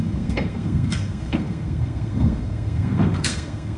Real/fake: fake